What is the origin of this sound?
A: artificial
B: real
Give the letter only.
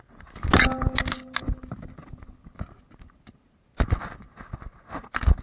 B